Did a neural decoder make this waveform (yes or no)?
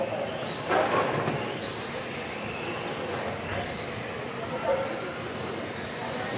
no